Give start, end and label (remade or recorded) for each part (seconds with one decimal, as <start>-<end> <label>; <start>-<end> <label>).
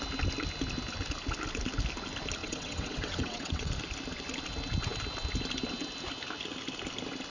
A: 0.0-2.4 recorded; 2.4-3.7 remade; 3.7-7.3 recorded